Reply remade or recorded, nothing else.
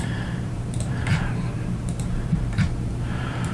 remade